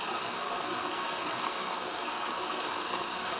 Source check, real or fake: fake